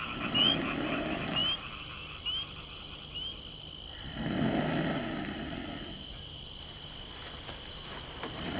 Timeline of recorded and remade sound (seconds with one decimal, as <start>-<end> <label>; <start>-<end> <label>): 0.0-8.6 recorded